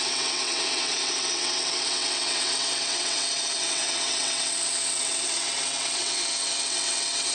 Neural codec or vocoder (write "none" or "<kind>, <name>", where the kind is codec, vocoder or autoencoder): vocoder, WaveNeXt